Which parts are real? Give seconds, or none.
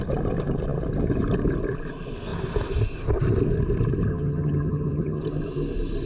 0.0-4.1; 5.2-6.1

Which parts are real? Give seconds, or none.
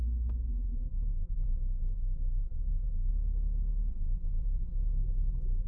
0.0-0.5; 3.1-3.9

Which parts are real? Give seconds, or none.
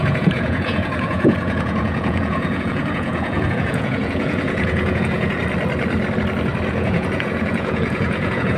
5.4-6.7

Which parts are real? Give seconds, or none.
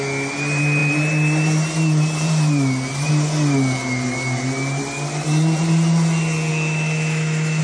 0.0-6.5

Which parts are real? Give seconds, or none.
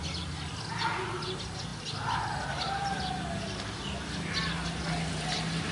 0.0-5.7